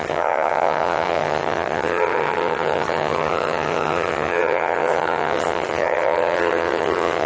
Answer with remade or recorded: remade